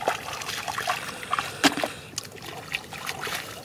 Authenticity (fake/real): real